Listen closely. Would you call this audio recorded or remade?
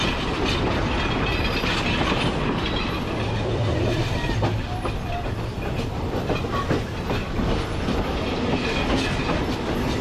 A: recorded